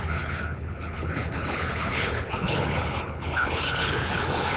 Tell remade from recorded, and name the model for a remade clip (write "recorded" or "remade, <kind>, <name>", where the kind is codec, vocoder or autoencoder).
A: remade, codec, HILCodec